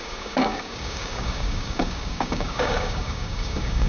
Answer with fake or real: fake